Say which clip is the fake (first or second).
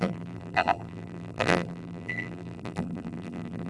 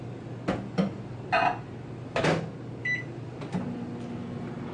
first